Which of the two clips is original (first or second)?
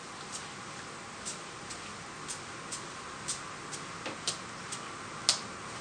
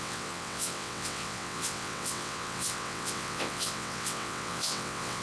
first